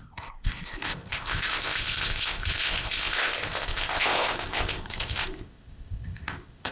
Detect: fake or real fake